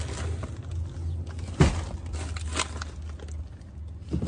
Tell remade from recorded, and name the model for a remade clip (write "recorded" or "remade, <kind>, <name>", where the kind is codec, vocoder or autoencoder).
recorded